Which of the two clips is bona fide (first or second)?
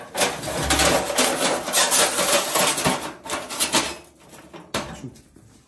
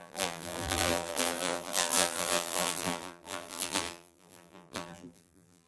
first